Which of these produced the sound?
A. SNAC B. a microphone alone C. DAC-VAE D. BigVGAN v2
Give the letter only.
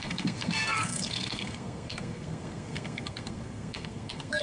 A